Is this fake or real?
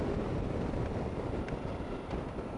real